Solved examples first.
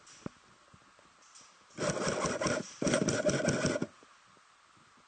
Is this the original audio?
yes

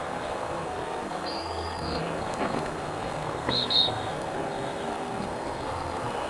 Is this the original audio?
no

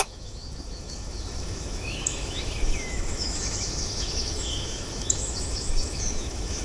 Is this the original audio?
no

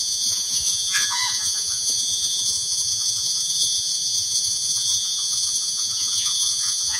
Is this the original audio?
no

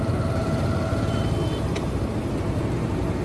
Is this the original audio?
yes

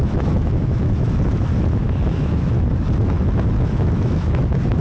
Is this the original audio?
no